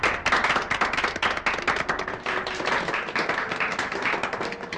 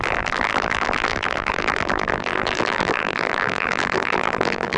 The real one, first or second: first